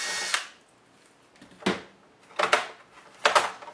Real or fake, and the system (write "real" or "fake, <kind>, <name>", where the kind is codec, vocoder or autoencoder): real